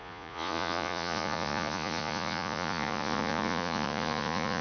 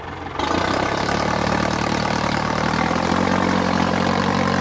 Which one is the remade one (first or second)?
first